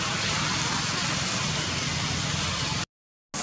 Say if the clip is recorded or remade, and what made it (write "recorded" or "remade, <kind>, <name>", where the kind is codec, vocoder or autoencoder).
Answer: recorded